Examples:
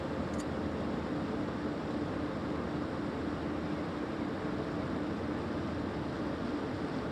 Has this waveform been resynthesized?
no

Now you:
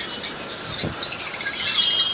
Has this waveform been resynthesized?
no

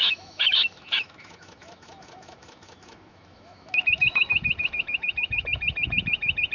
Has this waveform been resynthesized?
yes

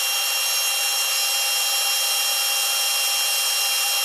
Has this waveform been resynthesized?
no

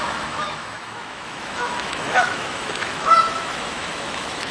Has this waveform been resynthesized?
yes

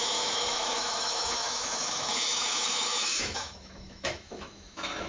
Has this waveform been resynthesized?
yes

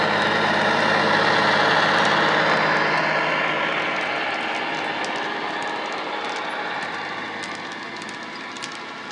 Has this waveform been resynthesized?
no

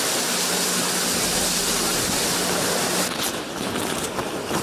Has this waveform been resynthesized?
no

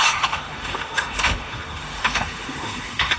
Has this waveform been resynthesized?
yes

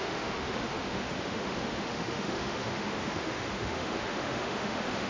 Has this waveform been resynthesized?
yes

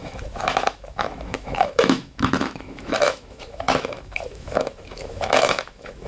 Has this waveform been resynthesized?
yes